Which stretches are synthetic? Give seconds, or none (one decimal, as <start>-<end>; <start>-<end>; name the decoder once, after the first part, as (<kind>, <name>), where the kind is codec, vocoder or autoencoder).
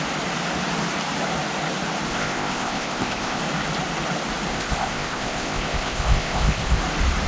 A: 2.1-3.4 (codec, ZipCodec); 4.5-6.8